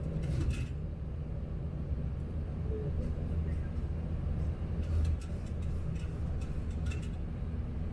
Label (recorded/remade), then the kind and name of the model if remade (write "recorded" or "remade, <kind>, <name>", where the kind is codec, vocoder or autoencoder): recorded